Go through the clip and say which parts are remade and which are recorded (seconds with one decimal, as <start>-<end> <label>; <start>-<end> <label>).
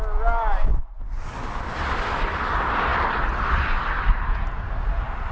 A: 0.0-5.3 recorded